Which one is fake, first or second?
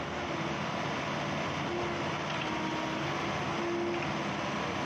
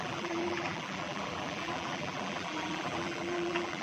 second